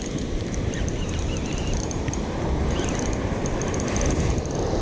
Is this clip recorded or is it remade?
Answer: recorded